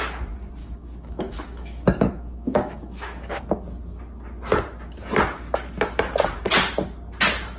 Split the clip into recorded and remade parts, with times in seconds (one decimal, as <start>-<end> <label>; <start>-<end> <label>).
0.0-0.6 recorded; 0.6-3.4 remade; 3.4-7.6 recorded